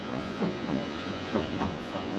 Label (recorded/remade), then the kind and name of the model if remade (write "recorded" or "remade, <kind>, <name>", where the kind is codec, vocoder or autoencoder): remade, vocoder, Vocos